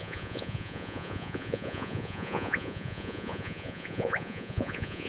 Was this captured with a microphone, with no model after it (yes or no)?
no